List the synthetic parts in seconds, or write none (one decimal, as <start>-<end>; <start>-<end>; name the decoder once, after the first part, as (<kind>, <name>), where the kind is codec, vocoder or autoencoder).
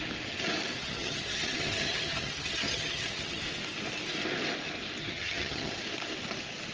0.8-3.4 (vocoder, HiFi-GAN); 5.0-5.8